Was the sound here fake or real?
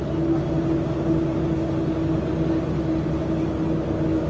real